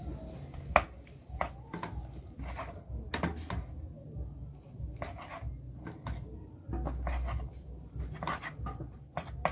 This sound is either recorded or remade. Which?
recorded